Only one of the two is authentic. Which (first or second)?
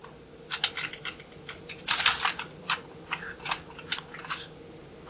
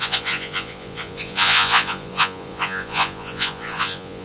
first